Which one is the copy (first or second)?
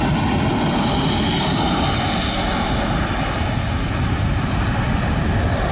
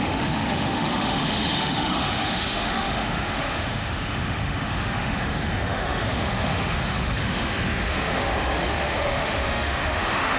second